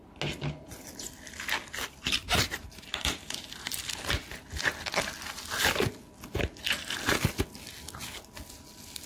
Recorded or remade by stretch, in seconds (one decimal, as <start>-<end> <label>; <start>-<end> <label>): 0.0-2.2 recorded; 2.2-3.9 remade; 3.9-9.1 recorded